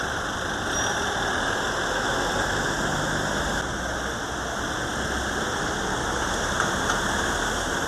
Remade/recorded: recorded